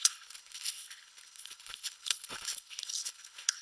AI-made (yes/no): yes